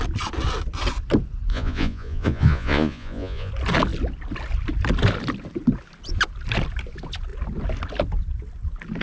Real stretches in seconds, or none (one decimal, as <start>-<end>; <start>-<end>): 0.0-1.5; 3.5-9.0